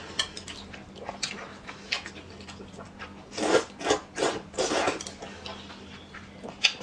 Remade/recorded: recorded